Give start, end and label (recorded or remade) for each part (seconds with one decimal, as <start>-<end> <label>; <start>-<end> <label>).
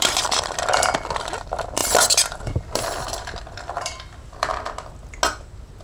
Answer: 0.0-4.5 remade; 4.5-5.8 recorded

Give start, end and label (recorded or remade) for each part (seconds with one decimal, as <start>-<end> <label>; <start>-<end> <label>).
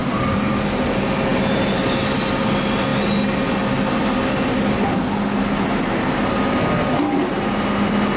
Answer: 0.0-8.2 recorded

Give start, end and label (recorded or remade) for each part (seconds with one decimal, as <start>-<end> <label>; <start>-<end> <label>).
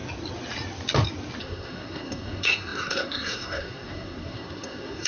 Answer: 0.0-1.4 recorded; 1.4-5.1 remade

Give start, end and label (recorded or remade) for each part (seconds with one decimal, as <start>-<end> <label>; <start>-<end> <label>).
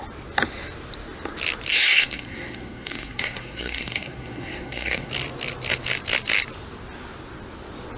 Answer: 0.0-1.7 recorded; 1.7-5.1 remade; 5.1-8.0 recorded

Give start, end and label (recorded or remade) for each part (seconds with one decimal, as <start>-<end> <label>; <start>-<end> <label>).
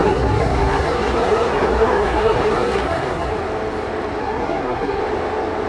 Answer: 0.0-3.3 remade; 3.3-4.2 recorded; 4.2-5.0 remade; 5.0-5.7 recorded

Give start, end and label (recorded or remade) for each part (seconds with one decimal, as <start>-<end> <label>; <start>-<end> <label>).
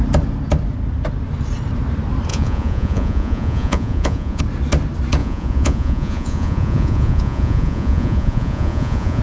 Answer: 0.0-2.3 recorded; 2.3-4.4 remade; 4.4-5.2 recorded; 5.2-9.2 remade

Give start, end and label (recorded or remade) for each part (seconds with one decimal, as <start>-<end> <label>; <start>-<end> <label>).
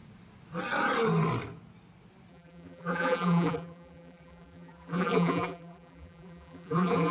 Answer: 0.0-2.3 recorded; 2.3-7.1 remade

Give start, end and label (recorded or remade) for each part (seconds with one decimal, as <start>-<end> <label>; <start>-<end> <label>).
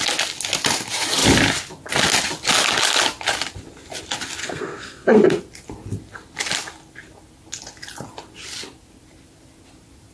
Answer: 0.0-4.4 recorded; 4.4-5.4 remade; 5.4-10.1 recorded